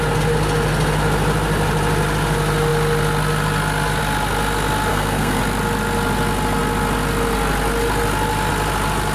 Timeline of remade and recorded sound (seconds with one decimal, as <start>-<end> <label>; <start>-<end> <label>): 0.0-4.9 recorded; 4.9-5.4 remade; 5.4-9.1 recorded